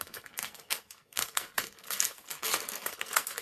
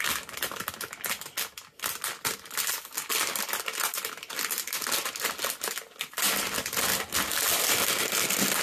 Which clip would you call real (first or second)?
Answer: second